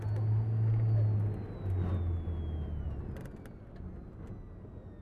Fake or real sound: real